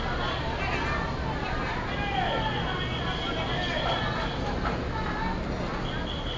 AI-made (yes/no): no